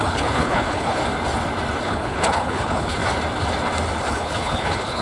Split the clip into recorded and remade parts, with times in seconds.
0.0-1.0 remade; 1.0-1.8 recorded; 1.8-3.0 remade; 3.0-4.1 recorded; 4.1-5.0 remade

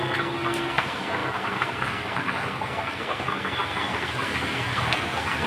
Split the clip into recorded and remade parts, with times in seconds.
0.0-5.5 remade

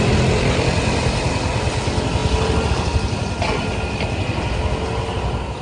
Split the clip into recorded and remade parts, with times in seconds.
0.0-5.6 recorded

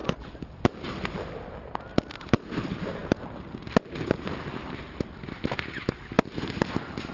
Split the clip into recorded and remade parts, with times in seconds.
0.0-7.1 recorded

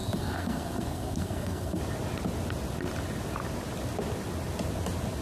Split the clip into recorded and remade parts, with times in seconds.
0.0-1.8 remade; 1.8-5.2 recorded

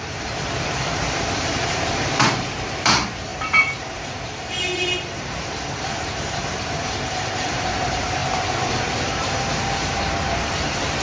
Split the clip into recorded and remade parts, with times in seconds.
0.0-8.2 remade; 8.2-8.7 recorded; 8.7-11.0 remade